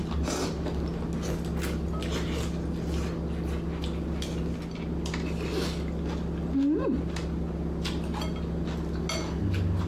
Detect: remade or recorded recorded